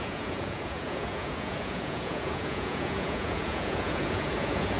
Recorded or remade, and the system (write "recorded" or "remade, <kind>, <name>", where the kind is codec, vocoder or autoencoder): remade, vocoder, Vocos